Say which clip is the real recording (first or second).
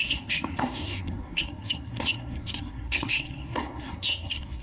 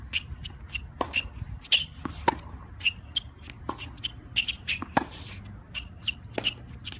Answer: second